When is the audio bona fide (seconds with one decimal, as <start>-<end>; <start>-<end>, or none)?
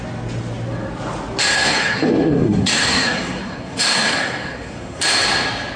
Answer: 0.0-1.5; 5.0-5.8